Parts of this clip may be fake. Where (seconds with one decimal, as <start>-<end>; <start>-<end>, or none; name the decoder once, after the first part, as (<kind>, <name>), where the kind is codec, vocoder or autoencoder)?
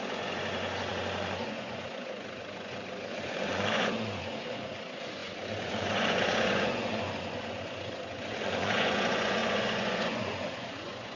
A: 0.0-11.2 (vocoder, Vocos)